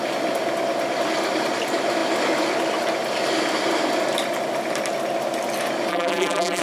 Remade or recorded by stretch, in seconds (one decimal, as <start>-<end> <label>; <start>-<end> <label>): 0.0-5.9 recorded; 5.9-6.6 remade